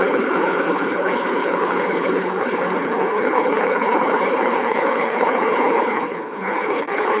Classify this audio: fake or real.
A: fake